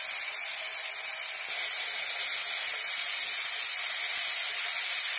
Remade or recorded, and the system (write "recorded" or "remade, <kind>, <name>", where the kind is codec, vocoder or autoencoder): recorded